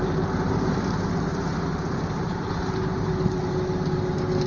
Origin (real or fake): real